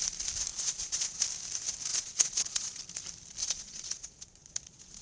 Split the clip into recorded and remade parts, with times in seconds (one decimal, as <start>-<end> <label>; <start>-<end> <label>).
0.0-0.5 recorded; 0.5-1.2 remade; 1.2-1.9 recorded; 1.9-2.8 remade; 2.8-3.4 recorded; 3.4-5.0 remade